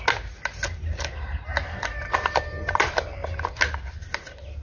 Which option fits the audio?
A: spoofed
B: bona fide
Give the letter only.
B